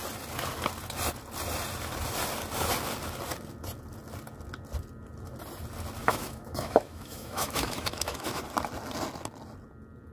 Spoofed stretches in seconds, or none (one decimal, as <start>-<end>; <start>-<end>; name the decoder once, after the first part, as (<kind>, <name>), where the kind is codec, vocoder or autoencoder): 6.0-8.4 (autoencoder, DAC-VAE)